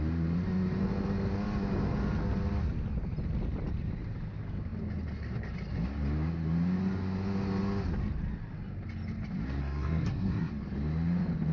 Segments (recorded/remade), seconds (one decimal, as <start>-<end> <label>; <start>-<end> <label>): 0.0-9.6 recorded; 9.6-10.5 remade; 10.5-11.5 recorded